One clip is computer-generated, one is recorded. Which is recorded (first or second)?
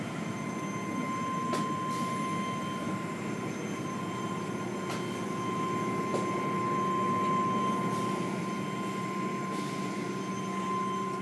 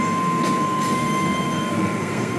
first